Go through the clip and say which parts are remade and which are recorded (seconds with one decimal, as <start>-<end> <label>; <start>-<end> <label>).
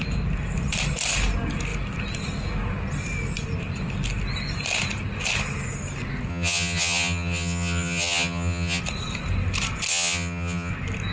0.0-6.3 recorded; 6.3-8.8 remade; 8.8-9.9 recorded; 9.9-10.7 remade; 10.7-11.1 recorded